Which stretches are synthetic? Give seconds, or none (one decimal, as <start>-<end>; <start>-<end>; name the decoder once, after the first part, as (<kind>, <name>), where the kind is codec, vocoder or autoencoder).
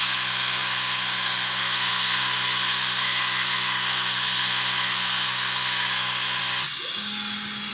0.0-6.4 (codec, SNAC)